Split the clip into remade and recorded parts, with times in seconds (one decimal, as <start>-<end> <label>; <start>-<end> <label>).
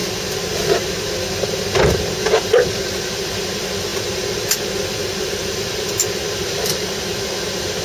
0.0-7.8 recorded